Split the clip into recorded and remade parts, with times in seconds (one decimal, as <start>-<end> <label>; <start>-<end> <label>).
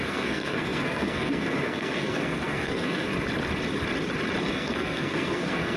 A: 0.0-3.1 remade; 3.1-4.5 recorded; 4.5-5.8 remade